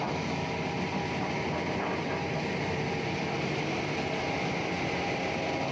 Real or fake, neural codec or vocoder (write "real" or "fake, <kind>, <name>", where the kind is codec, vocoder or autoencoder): real